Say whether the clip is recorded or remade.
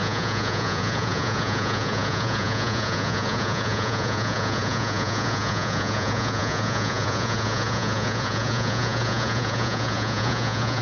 remade